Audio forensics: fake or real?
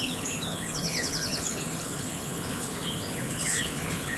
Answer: fake